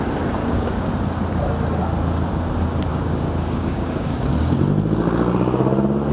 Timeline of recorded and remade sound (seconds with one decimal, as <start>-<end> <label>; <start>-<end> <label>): 0.0-0.4 recorded; 0.4-0.9 remade; 0.9-2.9 recorded; 2.9-4.3 remade; 4.3-6.1 recorded